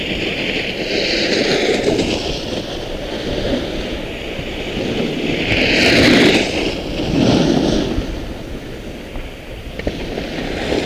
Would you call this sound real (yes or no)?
yes